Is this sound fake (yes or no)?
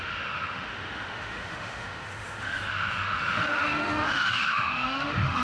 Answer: yes